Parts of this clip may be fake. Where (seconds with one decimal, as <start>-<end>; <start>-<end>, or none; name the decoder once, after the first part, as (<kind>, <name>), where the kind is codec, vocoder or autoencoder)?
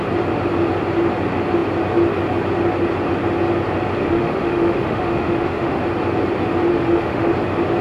4.0-5.8 (autoencoder, DAC-VAE); 6.7-7.3